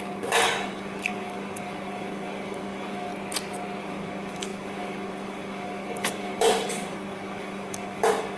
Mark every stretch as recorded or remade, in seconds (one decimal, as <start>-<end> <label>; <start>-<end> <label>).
0.0-3.1 remade; 3.1-3.8 recorded; 3.8-8.4 remade